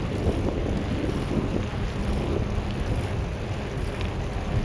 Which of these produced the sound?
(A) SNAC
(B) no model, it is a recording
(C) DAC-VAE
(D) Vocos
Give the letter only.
B